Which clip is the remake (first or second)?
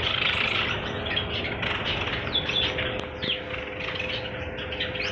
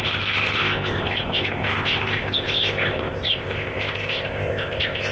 second